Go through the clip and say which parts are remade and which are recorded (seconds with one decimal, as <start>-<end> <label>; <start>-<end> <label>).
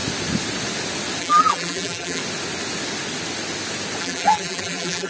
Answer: 0.0-1.2 recorded; 1.2-2.2 remade; 2.2-4.0 recorded; 4.0-5.1 remade